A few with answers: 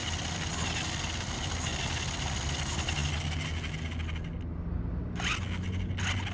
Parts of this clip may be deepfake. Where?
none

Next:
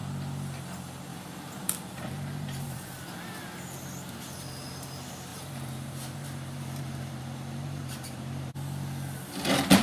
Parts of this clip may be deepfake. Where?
1.1-3.0 (vocoder, BigVGAN v2); 5.3-8.5

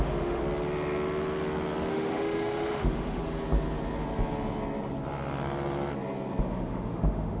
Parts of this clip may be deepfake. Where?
0.0-0.4 (autoencoder, DAC-VAE); 1.9-3.2; 6.4-7.4